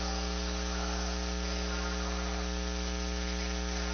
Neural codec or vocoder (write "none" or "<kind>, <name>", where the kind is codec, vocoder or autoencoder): none